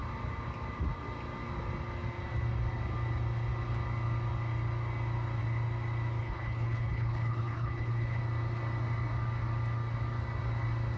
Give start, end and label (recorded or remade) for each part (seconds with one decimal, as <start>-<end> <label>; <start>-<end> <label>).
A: 0.0-6.2 recorded; 6.2-8.2 remade; 8.2-11.0 recorded